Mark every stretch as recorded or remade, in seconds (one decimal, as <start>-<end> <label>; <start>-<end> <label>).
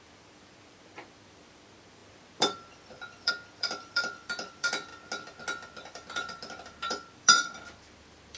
0.0-4.9 remade; 4.9-5.9 recorded; 5.9-8.4 remade